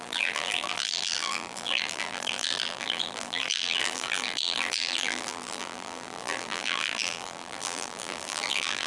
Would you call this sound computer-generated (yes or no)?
yes